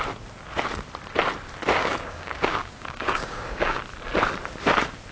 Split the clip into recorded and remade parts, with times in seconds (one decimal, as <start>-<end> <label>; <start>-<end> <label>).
0.0-1.8 recorded; 1.8-3.8 remade; 3.8-5.1 recorded